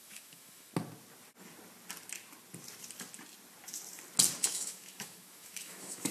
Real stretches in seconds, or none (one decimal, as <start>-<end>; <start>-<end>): 0.7-4.4

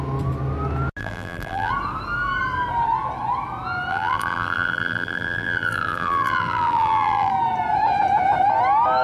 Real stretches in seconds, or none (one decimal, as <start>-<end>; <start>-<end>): 0.0-1.0; 1.7-3.9; 7.3-9.0

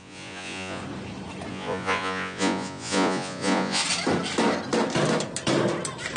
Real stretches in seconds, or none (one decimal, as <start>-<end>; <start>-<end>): 0.8-1.5; 3.8-6.2